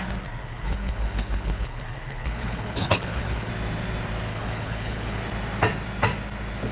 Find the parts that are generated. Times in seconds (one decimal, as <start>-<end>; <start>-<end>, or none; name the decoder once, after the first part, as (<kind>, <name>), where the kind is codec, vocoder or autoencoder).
0.4-3.5 (codec, HILCodec); 4.3-5.2